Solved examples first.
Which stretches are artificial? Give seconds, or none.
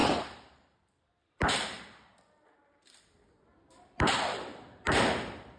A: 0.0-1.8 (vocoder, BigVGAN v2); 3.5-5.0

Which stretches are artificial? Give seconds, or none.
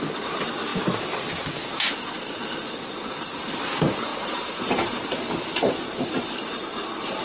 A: 4.1-7.2 (vocoder, BigVGAN v2)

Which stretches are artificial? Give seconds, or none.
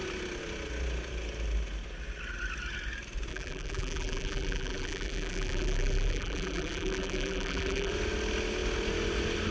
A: 3.3-7.9 (vocoder, BigVGAN v2)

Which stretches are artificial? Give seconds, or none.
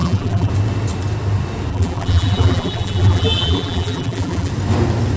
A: 0.0-0.5 (vocoder, BigVGAN v2); 1.7-4.5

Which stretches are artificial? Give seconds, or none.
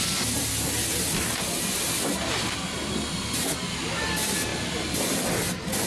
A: none